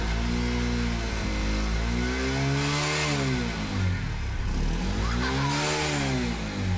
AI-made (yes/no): no